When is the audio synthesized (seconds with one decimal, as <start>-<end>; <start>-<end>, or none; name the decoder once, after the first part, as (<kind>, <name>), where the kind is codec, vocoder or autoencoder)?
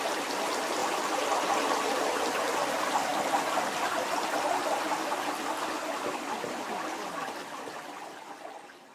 none